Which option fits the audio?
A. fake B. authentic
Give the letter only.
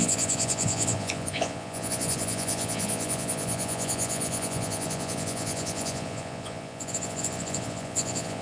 A